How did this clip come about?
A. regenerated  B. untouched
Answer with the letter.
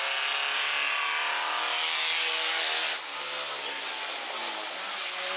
B